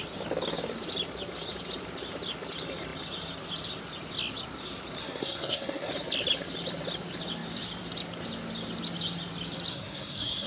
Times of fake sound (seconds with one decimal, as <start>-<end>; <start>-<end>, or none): 5.0-5.9; 9.7-10.5